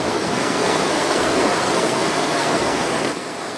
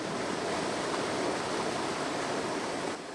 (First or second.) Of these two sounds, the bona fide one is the second